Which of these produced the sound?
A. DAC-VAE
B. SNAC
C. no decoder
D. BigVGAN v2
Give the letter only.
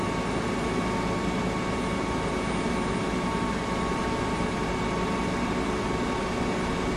C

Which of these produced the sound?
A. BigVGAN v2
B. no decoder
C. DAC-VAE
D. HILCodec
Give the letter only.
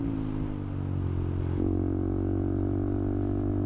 B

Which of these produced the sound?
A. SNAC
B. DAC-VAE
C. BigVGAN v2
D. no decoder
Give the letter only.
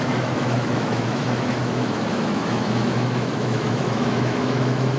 B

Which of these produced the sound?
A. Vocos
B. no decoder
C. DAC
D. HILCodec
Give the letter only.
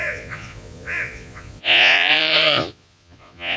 A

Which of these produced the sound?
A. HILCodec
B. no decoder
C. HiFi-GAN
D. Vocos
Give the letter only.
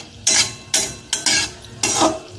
B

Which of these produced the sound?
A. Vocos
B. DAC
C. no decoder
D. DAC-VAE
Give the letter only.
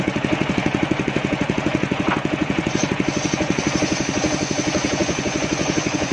A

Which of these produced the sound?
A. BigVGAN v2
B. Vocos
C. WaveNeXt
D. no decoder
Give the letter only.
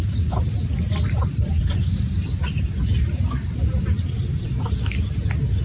D